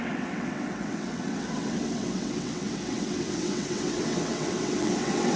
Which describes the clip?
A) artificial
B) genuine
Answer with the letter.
A